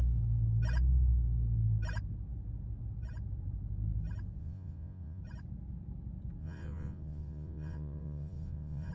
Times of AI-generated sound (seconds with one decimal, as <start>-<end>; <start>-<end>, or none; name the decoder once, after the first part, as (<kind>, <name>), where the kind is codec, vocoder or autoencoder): 4.4-5.2 (vocoder, Vocos); 6.4-8.9

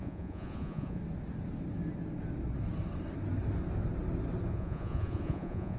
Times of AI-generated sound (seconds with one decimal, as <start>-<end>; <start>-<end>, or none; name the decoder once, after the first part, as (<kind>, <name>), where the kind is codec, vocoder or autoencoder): 0.0-1.0 (vocoder, Vocos); 4.5-5.8

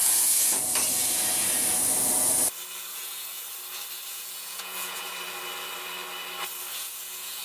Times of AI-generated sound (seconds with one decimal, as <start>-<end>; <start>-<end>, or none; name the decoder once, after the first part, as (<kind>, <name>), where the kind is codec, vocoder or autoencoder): 0.0-0.6 (vocoder, Vocos); 2.9-3.4; 4.1-5.1; 6.7-7.4

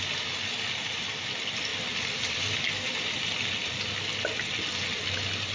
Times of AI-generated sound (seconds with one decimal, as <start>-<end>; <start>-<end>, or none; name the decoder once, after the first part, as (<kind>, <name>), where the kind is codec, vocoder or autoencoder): none

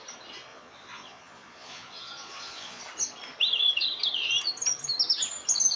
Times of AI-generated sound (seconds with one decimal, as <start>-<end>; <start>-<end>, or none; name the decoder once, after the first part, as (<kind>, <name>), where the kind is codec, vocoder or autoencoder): 0.5-2.8 (vocoder, Vocos)

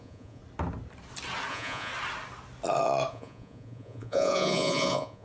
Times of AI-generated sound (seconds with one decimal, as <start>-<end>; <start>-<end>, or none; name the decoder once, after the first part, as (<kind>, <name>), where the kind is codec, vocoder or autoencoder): 0.0-0.4 (vocoder, Vocos); 1.5-1.9; 3.1-5.2

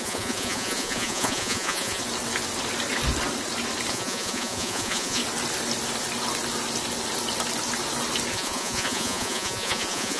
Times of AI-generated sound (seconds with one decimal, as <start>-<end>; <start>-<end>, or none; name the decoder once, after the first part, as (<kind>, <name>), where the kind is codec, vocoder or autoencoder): 0.0-2.0 (vocoder, Vocos); 3.9-5.2; 8.3-10.2

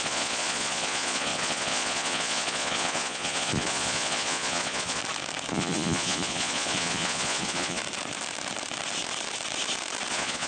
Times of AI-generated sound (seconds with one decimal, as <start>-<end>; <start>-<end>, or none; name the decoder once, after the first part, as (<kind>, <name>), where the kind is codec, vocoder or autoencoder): 0.0-5.0 (vocoder, Vocos); 5.5-7.8; 10.1-10.5